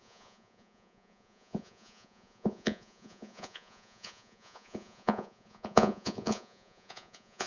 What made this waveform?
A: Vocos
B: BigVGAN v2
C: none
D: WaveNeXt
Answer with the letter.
A